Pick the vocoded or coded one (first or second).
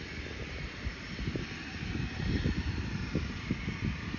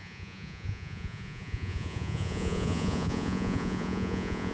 second